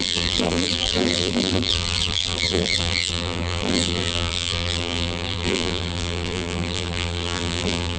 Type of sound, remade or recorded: remade